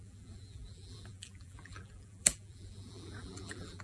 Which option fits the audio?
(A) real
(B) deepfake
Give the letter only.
B